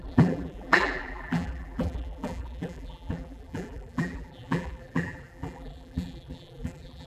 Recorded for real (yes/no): no